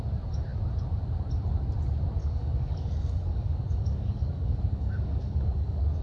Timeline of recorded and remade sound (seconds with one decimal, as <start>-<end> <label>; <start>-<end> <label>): 0.0-2.2 recorded; 2.2-6.0 remade